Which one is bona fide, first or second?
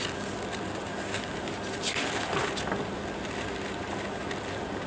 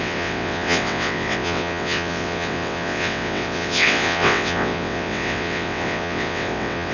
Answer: first